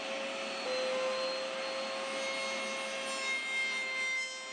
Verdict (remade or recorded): recorded